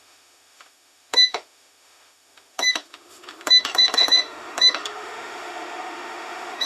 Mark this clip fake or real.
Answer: fake